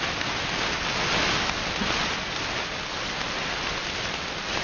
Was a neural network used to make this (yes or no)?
no